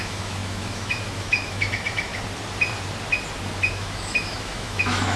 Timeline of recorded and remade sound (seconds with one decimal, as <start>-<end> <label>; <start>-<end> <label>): 0.0-2.1 remade; 2.1-3.7 recorded; 3.7-5.2 remade